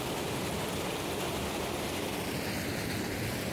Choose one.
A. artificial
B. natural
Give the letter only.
B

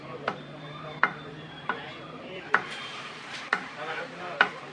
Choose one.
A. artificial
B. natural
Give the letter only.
A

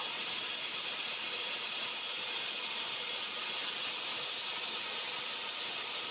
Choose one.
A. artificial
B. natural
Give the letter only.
B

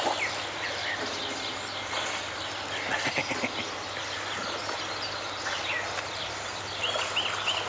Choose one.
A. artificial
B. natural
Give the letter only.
B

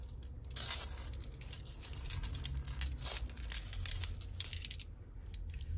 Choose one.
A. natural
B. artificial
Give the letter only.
A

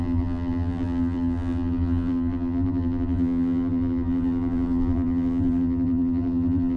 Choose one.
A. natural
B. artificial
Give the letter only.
B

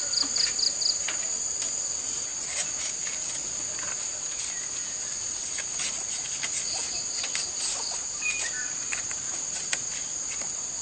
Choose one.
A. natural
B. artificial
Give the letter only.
A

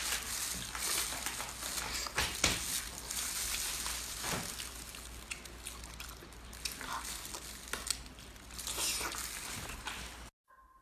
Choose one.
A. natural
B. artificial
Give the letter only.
A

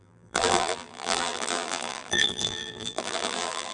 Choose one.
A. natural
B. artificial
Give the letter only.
B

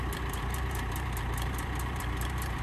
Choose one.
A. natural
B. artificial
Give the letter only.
B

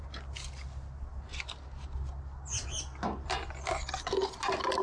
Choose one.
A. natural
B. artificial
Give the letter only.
A